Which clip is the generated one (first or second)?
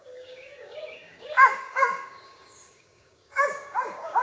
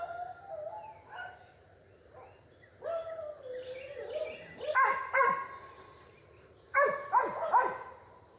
first